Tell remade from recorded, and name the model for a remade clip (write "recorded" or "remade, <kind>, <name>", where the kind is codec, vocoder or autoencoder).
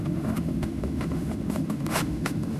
remade, autoencoder, DAC-VAE